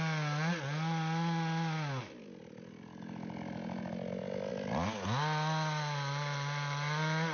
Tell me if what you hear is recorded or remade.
recorded